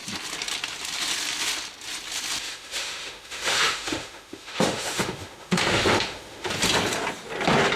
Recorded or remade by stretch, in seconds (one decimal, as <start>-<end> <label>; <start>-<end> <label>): 0.0-2.4 recorded; 2.4-6.5 remade; 6.5-7.8 recorded